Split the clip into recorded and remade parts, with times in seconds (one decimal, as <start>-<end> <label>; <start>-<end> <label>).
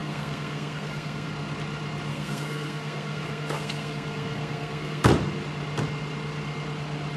0.0-1.3 remade; 1.3-2.1 recorded; 2.1-5.1 remade; 5.1-7.2 recorded